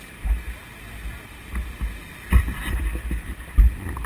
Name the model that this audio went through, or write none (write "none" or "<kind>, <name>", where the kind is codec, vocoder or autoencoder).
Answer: none